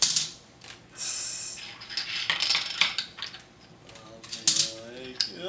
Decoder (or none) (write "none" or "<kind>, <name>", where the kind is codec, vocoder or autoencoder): none